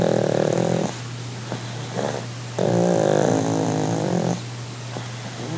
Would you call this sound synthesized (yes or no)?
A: no